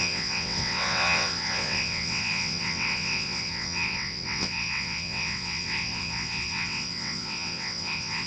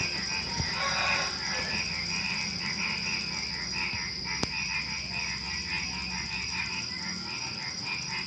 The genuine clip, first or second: second